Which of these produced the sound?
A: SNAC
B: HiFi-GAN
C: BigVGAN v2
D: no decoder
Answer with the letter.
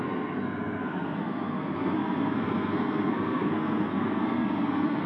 A